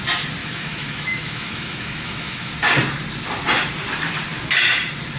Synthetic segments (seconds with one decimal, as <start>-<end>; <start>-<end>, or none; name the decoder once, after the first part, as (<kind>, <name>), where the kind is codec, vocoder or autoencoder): 0.4-2.5 (autoencoder, DAC-VAE)

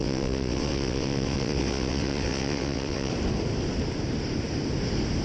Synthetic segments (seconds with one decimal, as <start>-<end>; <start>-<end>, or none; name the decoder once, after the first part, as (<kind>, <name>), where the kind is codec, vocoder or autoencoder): 0.0-3.1 (vocoder, WaveNeXt)